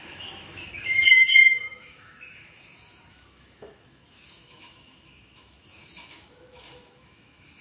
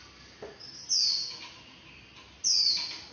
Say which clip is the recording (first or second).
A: second